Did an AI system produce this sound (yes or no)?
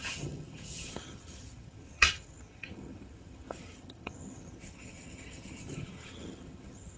yes